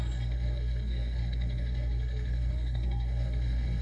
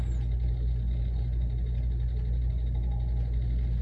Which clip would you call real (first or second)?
second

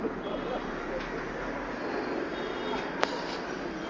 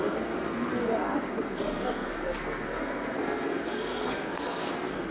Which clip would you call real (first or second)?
first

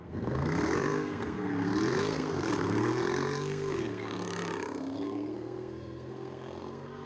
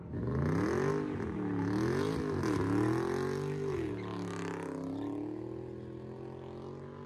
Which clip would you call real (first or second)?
second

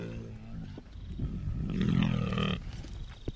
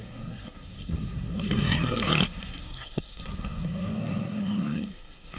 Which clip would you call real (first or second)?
first